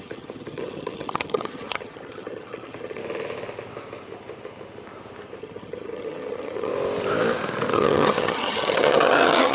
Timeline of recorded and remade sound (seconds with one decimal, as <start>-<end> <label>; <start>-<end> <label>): 0.0-3.0 remade; 3.0-5.4 recorded; 5.4-6.7 remade; 6.7-7.7 recorded; 7.7-9.5 remade